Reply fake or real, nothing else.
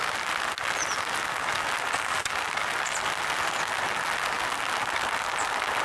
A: real